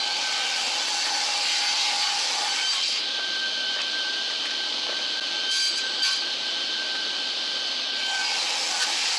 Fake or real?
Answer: real